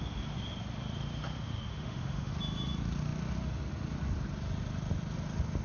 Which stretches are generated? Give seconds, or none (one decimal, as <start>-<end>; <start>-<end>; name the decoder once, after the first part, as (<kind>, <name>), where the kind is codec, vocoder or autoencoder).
1.7-2.3 (autoencoder, DAC-VAE)